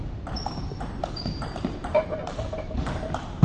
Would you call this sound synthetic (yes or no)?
yes